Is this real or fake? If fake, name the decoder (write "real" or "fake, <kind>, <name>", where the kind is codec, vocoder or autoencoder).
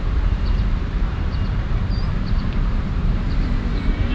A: fake, vocoder, BigVGAN v2